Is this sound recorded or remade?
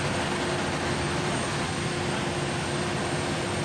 recorded